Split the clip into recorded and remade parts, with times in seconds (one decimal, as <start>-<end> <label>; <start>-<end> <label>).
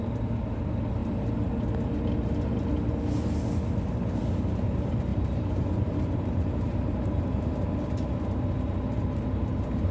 0.0-5.1 recorded; 5.1-7.5 remade; 7.5-9.9 recorded